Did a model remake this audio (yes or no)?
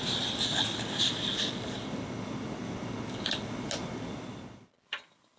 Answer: no